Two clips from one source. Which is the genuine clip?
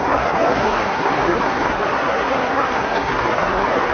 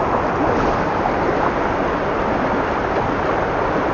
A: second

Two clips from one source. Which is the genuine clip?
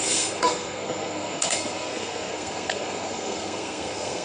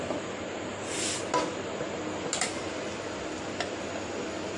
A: second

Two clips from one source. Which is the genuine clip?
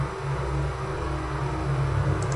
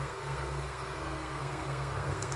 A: first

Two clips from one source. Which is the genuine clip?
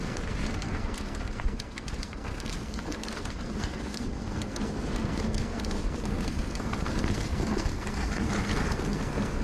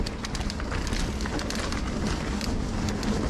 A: second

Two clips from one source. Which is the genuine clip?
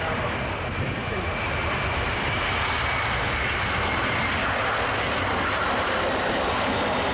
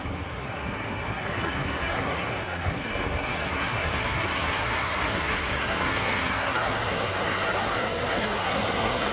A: first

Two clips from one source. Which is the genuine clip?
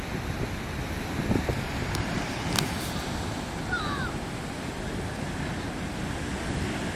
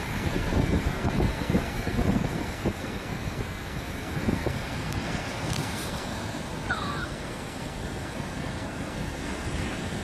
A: first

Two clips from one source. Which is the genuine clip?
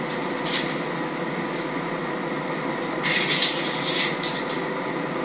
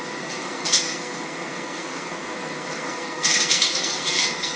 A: first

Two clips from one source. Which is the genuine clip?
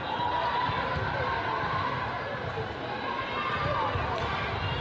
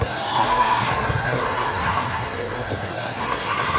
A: first